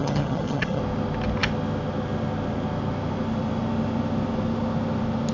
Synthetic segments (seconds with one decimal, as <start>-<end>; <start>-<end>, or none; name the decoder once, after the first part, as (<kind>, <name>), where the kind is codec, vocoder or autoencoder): 0.0-0.8 (vocoder, HiFi-GAN)